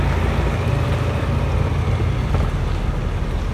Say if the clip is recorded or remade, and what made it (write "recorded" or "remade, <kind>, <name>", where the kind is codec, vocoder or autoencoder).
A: recorded